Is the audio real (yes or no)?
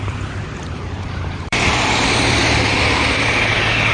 no